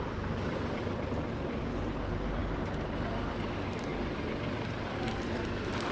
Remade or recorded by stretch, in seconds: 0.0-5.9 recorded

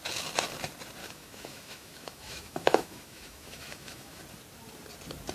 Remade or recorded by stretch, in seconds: 0.0-1.0 recorded; 1.0-4.2 remade; 4.2-5.3 recorded

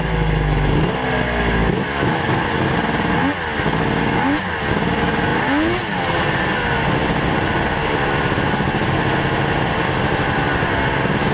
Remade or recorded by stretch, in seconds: 0.0-1.6 recorded; 1.6-2.6 remade; 2.6-11.3 recorded

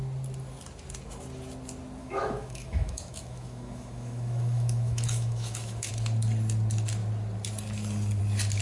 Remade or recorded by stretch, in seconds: 0.0-2.0 recorded; 2.0-5.9 remade; 5.9-8.6 recorded

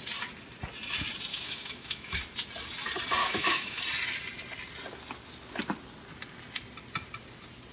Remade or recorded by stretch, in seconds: 0.0-1.3 recorded; 1.3-2.2 remade; 2.2-3.2 recorded; 3.2-3.8 remade; 3.8-7.7 recorded

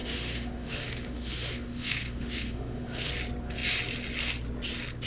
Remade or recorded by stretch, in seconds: 0.0-3.1 remade; 3.1-5.1 recorded

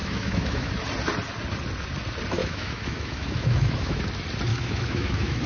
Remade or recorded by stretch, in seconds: 0.0-0.7 remade; 0.7-2.4 recorded; 2.4-4.0 remade; 4.0-4.5 recorded; 4.5-5.5 remade

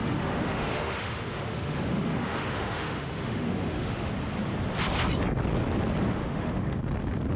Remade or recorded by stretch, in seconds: 0.0-4.1 remade; 4.1-6.2 recorded; 6.2-6.8 remade; 6.8-7.4 recorded